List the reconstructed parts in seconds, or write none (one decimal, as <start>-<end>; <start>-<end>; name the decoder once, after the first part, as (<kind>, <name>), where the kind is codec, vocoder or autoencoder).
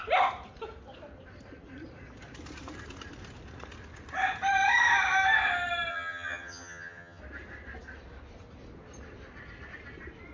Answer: 5.9-7.2 (vocoder, HiFi-GAN)